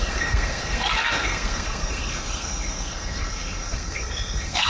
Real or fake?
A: fake